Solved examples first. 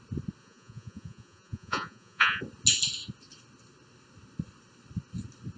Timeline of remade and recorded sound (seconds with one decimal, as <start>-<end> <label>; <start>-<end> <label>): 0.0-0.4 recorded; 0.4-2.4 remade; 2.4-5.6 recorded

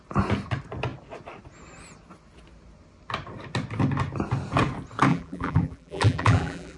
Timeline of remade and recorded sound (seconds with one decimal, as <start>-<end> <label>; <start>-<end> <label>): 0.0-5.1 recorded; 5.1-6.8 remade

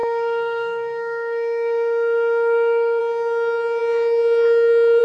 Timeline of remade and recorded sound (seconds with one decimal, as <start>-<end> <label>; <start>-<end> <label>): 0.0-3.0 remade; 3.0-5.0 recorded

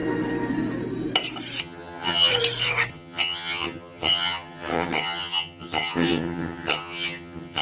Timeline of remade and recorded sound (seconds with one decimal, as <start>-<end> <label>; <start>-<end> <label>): 0.0-1.6 recorded; 1.6-2.3 remade; 2.3-2.9 recorded; 2.9-7.6 remade

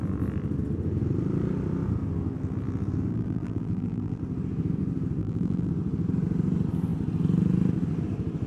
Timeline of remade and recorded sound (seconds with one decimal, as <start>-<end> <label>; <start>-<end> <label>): 0.0-3.1 recorded; 3.1-4.2 remade; 4.2-5.2 recorded; 5.2-5.7 remade; 5.7-8.5 recorded

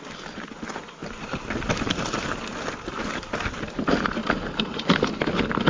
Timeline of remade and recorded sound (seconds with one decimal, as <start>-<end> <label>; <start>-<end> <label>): 0.0-4.2 recorded; 4.2-5.2 remade; 5.2-5.7 recorded

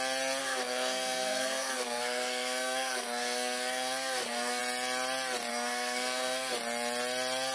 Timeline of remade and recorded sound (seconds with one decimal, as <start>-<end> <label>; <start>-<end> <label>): 0.0-0.4 recorded; 0.4-4.6 remade; 4.6-5.5 recorded; 5.5-6.5 remade; 6.5-7.5 recorded

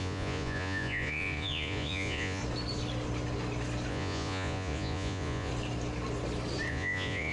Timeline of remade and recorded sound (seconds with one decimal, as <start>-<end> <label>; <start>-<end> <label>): 0.0-2.4 remade; 2.4-3.9 recorded; 3.9-5.5 remade; 5.5-6.7 recorded; 6.7-7.3 remade